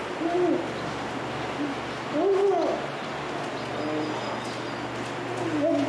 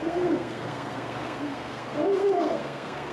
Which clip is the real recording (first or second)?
first